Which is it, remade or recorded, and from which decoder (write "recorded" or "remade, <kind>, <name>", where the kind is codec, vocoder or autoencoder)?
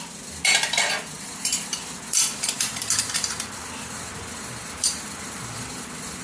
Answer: remade, vocoder, BigVGAN v2